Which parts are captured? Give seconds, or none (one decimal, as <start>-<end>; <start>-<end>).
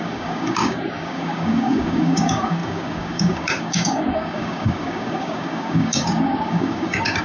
none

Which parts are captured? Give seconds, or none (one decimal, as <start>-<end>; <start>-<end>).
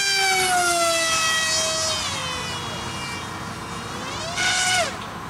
0.0-5.3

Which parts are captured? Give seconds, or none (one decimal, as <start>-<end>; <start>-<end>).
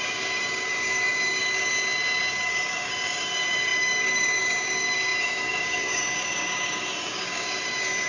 1.4-2.3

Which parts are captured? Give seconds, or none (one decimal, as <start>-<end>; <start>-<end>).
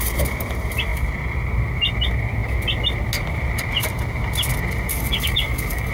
0.0-4.9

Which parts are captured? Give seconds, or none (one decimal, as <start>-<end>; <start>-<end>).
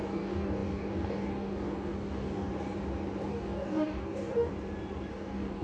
2.5-3.3; 4.5-5.1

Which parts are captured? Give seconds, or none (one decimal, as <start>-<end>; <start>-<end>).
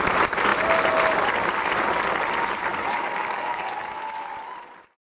0.0-2.7; 4.3-5.0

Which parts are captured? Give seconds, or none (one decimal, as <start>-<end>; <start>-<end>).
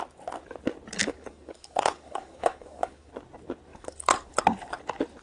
0.0-1.0; 3.1-3.7; 4.3-5.2